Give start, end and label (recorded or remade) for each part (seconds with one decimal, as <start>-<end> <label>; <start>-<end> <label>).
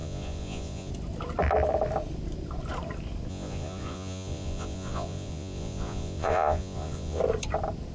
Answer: 0.0-0.9 remade; 0.9-3.3 recorded; 3.3-7.2 remade; 7.2-7.9 recorded